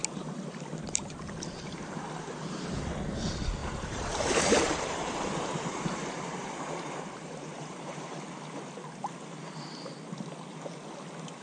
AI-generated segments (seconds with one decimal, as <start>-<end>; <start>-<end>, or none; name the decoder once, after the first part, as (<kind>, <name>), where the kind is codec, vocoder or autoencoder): 3.6-8.0 (vocoder, BigVGAN v2)